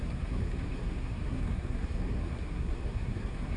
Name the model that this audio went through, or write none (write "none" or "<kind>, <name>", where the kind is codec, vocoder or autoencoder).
codec, SNAC